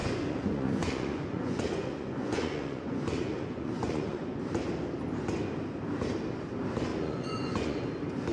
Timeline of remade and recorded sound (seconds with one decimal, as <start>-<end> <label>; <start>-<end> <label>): 0.0-4.4 remade; 4.4-6.9 recorded; 6.9-7.8 remade; 7.8-8.3 recorded